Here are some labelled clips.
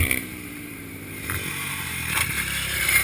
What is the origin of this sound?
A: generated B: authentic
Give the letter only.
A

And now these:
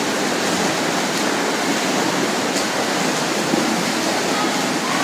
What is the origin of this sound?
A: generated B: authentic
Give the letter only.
B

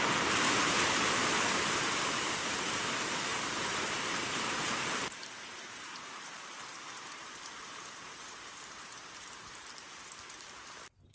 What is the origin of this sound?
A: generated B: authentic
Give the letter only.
A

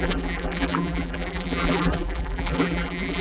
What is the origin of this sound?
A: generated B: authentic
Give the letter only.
A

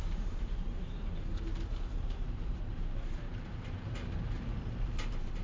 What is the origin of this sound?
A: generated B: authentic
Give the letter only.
A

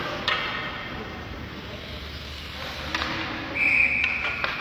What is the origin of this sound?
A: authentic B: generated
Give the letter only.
A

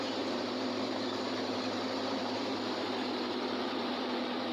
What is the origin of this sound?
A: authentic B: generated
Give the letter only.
B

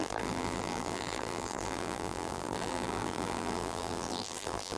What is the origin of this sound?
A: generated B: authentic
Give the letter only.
A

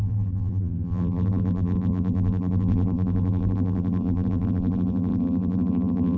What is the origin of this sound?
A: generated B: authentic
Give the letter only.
A